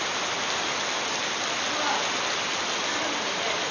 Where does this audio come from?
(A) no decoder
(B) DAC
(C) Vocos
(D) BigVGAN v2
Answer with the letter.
A